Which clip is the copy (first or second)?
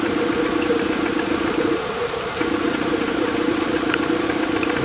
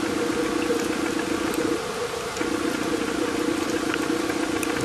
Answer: first